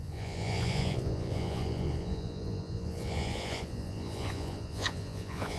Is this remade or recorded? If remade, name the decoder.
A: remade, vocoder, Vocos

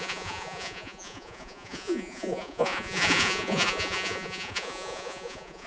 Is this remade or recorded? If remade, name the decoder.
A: remade, vocoder, Vocos